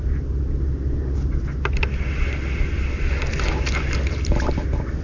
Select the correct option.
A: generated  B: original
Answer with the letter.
B